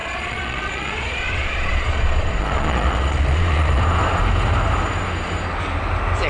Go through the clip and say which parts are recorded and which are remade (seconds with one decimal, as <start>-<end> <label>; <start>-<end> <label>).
0.0-3.8 remade; 3.8-6.3 recorded